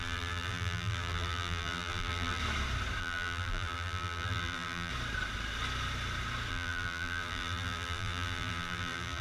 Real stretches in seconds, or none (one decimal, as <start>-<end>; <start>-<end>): 2.4-3.0; 4.9-6.5